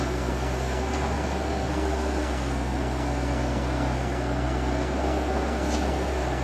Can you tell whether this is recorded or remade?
remade